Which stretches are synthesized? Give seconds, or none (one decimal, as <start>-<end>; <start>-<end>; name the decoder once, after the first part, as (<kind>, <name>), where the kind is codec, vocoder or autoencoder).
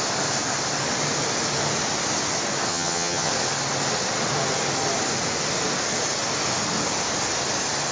2.7-3.3 (vocoder, HiFi-GAN)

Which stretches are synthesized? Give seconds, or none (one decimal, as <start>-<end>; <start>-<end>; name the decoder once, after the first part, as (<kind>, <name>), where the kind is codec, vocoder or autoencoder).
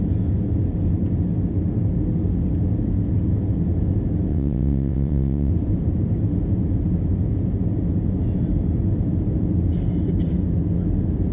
4.3-5.5 (vocoder, WaveNeXt)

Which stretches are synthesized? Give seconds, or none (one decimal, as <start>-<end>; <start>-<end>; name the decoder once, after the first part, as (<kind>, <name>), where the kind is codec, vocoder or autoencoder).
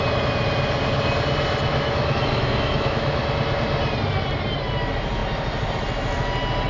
1.7-3.2 (autoencoder, DAC-VAE)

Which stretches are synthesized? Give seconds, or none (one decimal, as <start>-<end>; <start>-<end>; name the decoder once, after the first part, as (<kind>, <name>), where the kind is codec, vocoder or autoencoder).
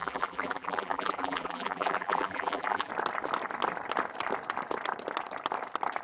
0.0-2.9 (vocoder, BigVGAN v2)